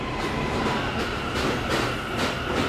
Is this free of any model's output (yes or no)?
yes